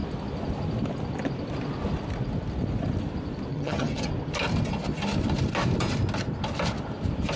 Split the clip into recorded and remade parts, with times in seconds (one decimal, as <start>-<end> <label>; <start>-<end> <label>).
0.0-3.5 recorded; 3.5-4.1 remade; 4.1-7.4 recorded